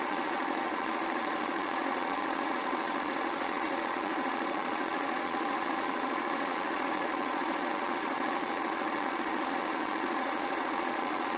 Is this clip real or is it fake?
fake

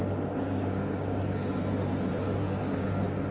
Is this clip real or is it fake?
real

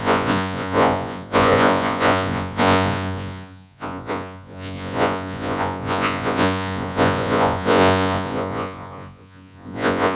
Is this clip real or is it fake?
fake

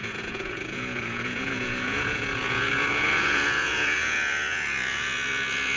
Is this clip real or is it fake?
fake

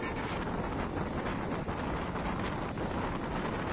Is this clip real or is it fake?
real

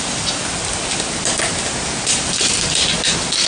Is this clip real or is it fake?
real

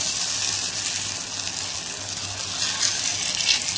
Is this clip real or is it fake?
real